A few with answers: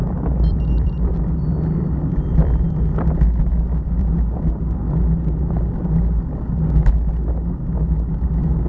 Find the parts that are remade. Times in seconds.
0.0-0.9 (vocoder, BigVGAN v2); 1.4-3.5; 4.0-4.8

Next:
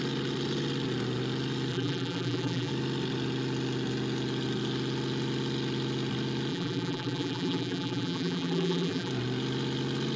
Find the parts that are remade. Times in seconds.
1.7-2.7 (vocoder, BigVGAN v2); 6.5-9.1